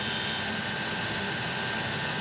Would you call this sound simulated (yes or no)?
no